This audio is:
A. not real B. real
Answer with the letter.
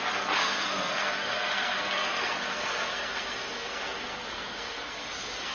A